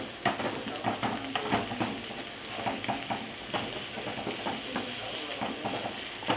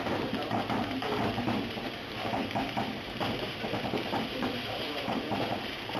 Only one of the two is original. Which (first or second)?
first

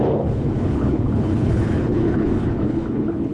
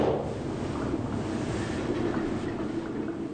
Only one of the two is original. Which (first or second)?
second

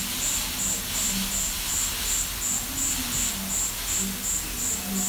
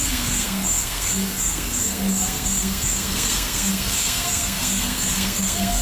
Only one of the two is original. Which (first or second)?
first